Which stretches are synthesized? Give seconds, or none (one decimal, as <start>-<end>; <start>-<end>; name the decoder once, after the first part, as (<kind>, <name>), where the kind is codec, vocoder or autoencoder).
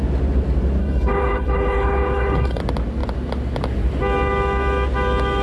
0.8-2.6 (codec, HILCodec)